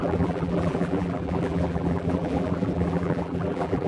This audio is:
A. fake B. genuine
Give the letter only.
A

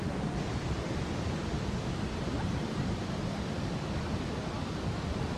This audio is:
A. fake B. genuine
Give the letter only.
A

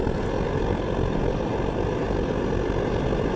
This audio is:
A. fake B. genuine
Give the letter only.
B